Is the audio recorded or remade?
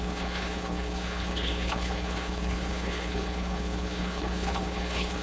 remade